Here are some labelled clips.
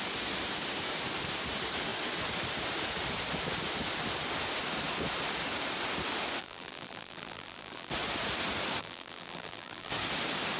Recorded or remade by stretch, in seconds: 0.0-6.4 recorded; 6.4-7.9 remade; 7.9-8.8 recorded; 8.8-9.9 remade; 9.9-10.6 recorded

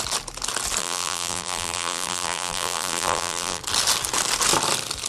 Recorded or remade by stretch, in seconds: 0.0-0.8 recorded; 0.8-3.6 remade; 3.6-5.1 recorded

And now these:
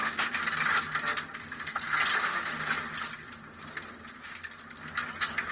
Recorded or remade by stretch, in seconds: 0.0-1.6 recorded; 1.6-2.1 remade; 2.1-5.5 recorded